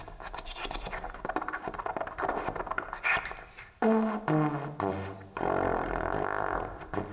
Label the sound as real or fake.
real